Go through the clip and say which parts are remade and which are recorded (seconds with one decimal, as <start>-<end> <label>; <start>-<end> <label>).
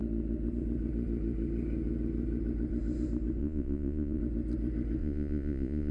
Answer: 0.0-3.4 recorded; 3.4-4.2 remade; 4.2-5.0 recorded; 5.0-5.9 remade